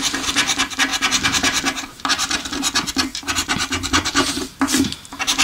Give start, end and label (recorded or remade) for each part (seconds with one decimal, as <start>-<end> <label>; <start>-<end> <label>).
0.0-0.9 recorded; 0.9-2.0 remade; 2.0-3.1 recorded; 3.1-4.5 remade; 4.5-5.4 recorded